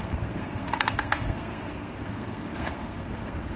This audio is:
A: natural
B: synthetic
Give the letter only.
B